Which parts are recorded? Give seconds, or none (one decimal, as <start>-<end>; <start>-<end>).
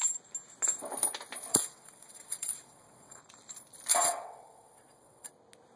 0.0-1.5; 3.2-3.9; 5.3-5.8